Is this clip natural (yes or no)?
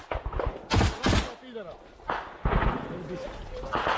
yes